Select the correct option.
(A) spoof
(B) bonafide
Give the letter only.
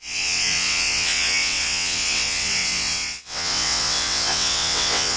A